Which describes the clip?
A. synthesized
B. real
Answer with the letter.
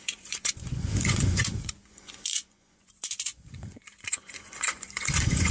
A